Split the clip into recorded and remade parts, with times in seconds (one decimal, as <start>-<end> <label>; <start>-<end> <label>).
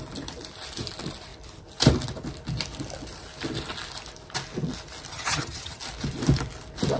0.0-5.1 recorded; 5.1-5.8 remade; 5.8-7.0 recorded